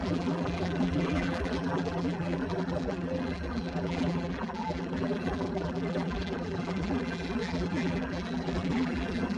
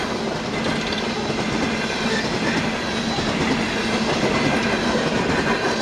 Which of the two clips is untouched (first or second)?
second